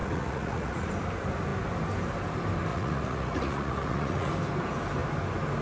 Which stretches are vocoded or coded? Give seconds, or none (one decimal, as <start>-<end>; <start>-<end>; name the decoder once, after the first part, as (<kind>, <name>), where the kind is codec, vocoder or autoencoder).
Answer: 0.0-0.9 (vocoder, Vocos); 2.7-4.3